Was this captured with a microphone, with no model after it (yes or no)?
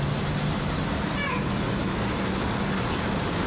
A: yes